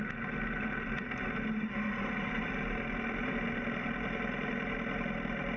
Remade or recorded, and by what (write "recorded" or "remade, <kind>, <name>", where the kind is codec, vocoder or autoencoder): recorded